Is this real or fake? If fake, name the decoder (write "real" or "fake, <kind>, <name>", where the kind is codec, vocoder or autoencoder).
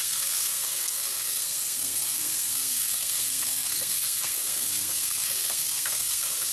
fake, codec, SNAC